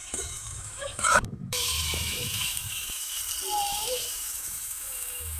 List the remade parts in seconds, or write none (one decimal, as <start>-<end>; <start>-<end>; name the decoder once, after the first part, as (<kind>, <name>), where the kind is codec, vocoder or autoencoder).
0.0-3.2 (autoencoder, DAC-VAE); 3.7-5.4